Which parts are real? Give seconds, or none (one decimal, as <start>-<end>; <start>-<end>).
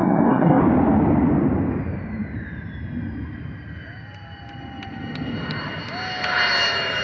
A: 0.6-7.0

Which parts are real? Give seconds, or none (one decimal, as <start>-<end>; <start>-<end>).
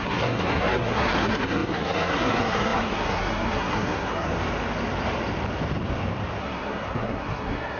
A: 4.3-6.4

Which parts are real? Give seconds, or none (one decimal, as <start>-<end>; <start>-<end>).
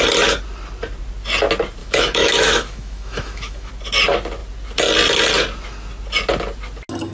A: 0.0-1.8; 3.7-7.1